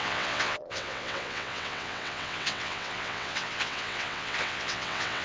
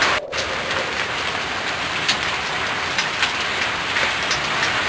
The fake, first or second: first